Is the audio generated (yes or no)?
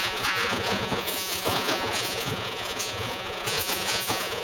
yes